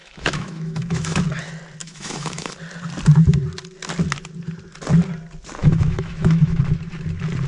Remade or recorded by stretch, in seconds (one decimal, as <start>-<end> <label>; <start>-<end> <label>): 0.0-1.2 remade; 1.2-1.8 recorded; 1.8-2.5 remade; 2.5-5.6 recorded; 5.6-6.6 remade; 6.6-7.5 recorded